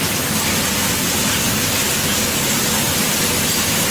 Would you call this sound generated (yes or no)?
no